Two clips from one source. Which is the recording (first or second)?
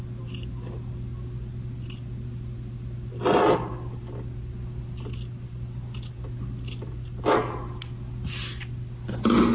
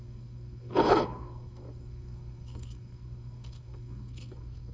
first